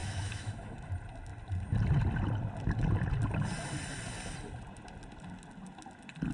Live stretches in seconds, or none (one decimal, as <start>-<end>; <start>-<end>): 0.9-6.3